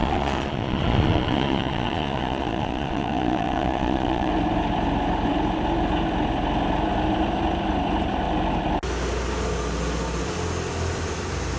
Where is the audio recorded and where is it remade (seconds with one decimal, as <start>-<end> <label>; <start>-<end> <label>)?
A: 0.0-4.3 remade; 4.3-11.6 recorded